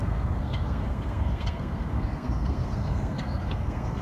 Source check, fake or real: fake